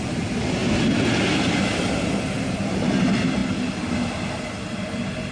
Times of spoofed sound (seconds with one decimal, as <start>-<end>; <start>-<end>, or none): none